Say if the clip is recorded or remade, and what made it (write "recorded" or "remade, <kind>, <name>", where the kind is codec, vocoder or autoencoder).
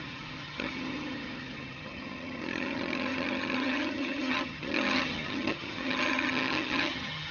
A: remade, vocoder, HiFi-GAN